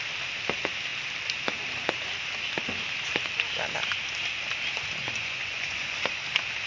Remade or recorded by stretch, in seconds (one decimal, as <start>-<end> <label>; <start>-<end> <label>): 0.0-5.0 recorded; 5.0-6.0 remade; 6.0-6.7 recorded